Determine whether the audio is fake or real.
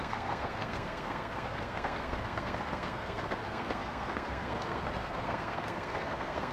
fake